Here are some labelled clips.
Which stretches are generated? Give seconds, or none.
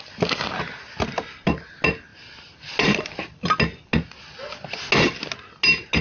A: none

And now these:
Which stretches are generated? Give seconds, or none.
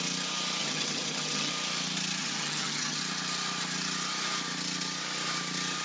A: 0.6-1.5 (vocoder, HiFi-GAN); 2.2-3.0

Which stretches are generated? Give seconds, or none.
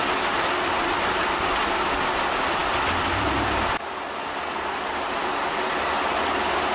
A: none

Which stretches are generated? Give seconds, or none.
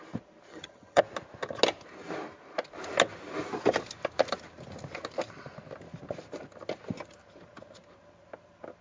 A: 0.5-1.0 (vocoder, HiFi-GAN)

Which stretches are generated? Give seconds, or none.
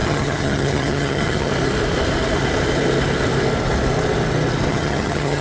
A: 0.0-1.5 (vocoder, HiFi-GAN); 4.7-5.4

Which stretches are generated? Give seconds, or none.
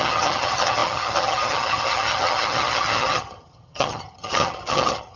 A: 0.0-5.2 (vocoder, HiFi-GAN)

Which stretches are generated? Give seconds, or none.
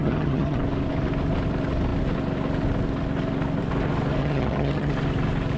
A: 0.0-0.6 (vocoder, HiFi-GAN); 4.2-4.9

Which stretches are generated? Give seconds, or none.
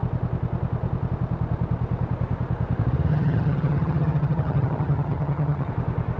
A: 3.1-5.7 (vocoder, HiFi-GAN)